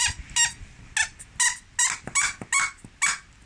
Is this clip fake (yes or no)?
no